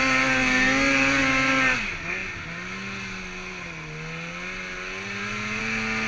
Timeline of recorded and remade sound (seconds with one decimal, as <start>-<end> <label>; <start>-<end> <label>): 0.0-6.1 recorded